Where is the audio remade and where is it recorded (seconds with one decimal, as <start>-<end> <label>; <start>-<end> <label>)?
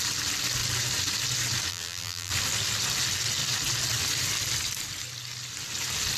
0.0-1.7 recorded; 1.7-2.3 remade; 2.3-6.2 recorded